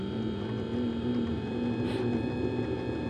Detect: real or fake real